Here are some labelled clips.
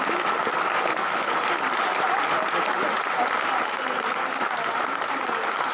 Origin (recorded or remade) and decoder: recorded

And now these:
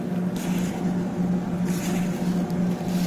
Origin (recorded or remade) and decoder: recorded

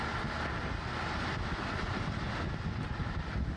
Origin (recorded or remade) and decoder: recorded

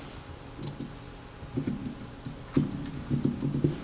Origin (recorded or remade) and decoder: recorded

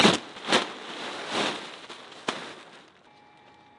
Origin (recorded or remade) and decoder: recorded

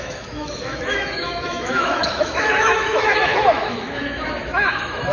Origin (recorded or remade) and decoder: remade, autoencoder, DAC-VAE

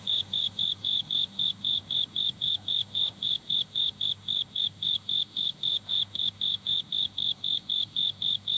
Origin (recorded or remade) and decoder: remade, autoencoder, DAC-VAE